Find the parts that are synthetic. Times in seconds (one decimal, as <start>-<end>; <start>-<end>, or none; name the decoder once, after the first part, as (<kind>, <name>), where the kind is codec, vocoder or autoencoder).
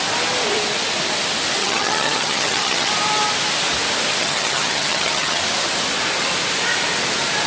1.6-2.9 (vocoder, HiFi-GAN); 4.2-5.4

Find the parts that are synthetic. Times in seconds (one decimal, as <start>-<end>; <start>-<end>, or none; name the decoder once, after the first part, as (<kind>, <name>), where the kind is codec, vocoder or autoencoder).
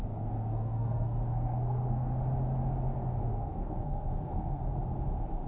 0.0-2.2 (codec, SNAC); 3.2-4.6